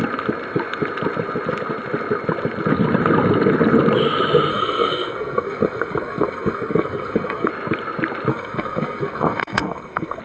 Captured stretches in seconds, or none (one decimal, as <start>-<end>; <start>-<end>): 0.0-4.5; 7.5-8.3